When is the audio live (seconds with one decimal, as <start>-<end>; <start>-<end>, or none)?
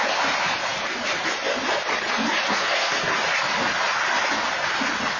0.0-2.5; 3.0-5.2